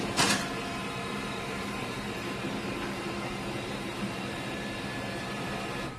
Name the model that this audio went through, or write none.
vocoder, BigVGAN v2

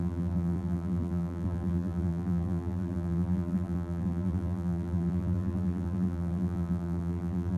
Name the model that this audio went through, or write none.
vocoder, BigVGAN v2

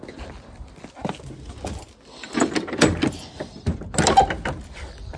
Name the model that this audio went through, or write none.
none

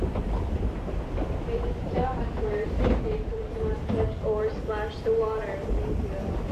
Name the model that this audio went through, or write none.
none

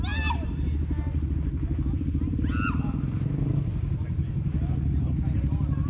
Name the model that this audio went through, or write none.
none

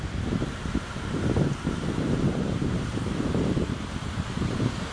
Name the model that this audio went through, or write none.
vocoder, BigVGAN v2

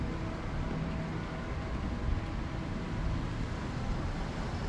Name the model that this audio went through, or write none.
none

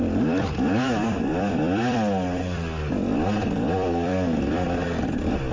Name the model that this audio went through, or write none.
vocoder, BigVGAN v2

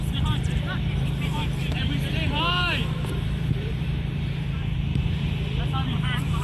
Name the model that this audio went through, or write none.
vocoder, BigVGAN v2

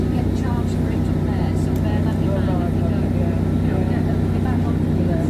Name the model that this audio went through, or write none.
none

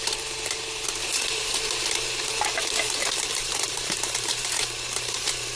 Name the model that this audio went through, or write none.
vocoder, BigVGAN v2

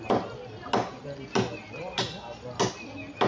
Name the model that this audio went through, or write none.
none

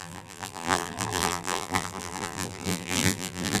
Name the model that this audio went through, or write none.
vocoder, BigVGAN v2